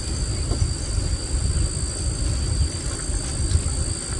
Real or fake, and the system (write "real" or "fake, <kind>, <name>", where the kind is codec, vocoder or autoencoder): real